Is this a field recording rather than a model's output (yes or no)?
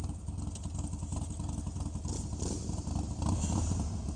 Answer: yes